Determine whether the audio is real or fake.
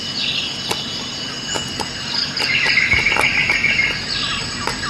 real